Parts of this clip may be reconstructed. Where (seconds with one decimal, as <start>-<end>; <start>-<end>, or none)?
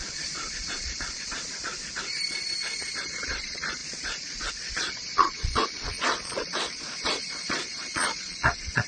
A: 0.0-1.9; 3.0-8.9